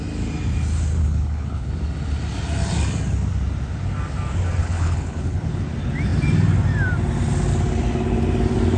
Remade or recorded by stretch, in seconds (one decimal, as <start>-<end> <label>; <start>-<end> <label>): 0.0-1.0 recorded; 1.0-1.7 remade; 1.7-4.6 recorded; 4.6-5.6 remade; 5.6-8.8 recorded